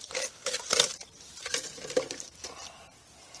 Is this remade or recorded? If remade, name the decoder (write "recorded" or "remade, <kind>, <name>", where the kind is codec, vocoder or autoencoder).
recorded